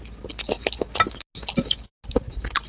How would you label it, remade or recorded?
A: recorded